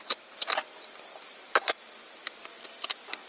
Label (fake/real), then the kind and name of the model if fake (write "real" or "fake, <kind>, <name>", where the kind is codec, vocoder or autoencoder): real